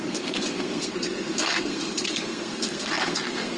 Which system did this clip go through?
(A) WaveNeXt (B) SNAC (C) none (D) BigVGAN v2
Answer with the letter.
B